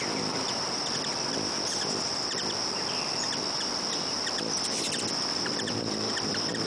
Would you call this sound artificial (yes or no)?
no